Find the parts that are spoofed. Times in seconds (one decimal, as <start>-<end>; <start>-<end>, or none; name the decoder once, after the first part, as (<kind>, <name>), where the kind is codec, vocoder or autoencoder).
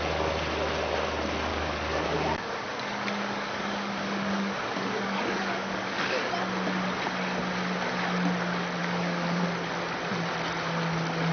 1.5-6.3 (codec, DAC); 8.8-9.4